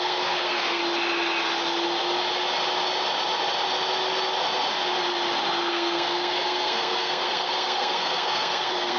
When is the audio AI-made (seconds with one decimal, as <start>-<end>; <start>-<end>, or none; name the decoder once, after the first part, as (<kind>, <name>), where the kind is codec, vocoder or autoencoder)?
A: 0.0-0.8 (codec, SNAC); 5.7-9.0